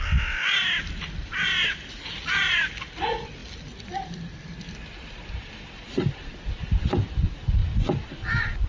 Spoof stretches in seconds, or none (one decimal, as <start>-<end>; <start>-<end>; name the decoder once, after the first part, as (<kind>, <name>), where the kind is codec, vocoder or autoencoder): none